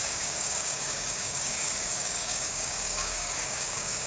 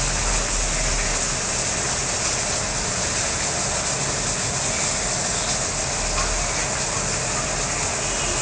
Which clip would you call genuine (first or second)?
second